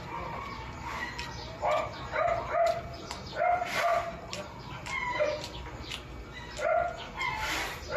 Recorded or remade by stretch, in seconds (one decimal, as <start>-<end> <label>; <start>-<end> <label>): 0.0-8.0 recorded